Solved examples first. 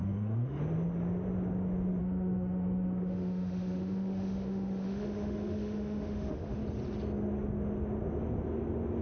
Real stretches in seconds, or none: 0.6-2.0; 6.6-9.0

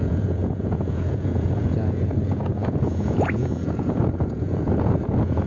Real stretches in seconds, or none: none

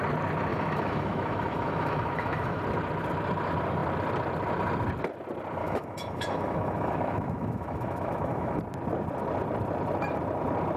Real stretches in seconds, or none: 0.0-0.5; 2.6-5.6; 8.6-10.8

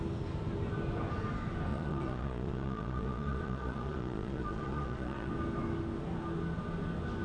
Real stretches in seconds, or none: 0.0-1.7; 5.3-7.2

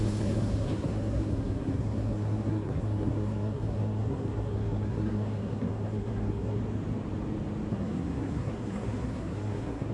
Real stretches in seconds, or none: 6.6-7.7

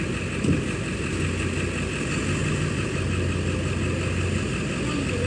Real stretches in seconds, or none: 0.0-2.4; 3.3-5.3

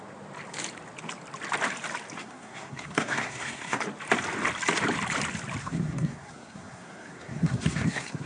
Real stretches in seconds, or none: 0.0-2.2; 3.8-5.6

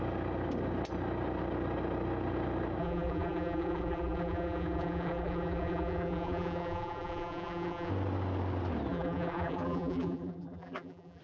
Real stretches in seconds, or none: 0.0-2.8; 7.9-8.9